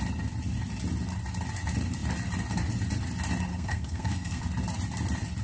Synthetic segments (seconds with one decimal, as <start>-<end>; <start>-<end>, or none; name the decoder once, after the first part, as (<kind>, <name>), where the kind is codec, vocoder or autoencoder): 3.5-4.4 (codec, SNAC)